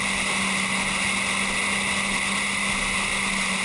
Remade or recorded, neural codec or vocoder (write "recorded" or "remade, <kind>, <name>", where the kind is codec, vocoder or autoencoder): recorded